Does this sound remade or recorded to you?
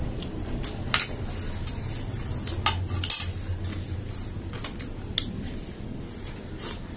recorded